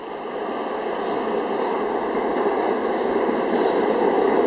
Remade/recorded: recorded